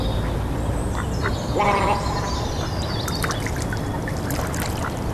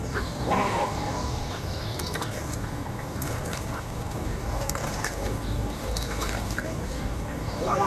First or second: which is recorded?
first